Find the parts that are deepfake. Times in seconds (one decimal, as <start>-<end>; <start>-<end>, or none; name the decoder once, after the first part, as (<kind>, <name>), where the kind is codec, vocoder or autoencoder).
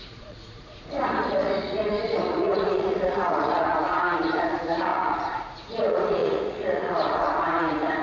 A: 0.0-8.0 (vocoder, Vocos)